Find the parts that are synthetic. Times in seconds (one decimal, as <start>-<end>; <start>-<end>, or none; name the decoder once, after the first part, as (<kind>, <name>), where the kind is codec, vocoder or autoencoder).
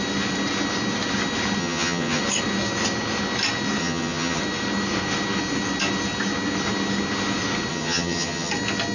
1.6-2.2 (vocoder, HiFi-GAN); 3.8-4.4; 7.7-8.5